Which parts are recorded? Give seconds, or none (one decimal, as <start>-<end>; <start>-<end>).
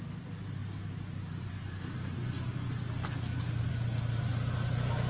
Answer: 0.0-5.1